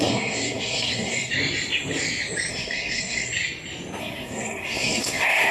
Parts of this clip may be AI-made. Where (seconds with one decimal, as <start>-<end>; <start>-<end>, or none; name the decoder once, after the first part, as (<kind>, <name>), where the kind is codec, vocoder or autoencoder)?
0.0-1.3 (codec, SNAC); 2.5-3.3; 4.0-5.5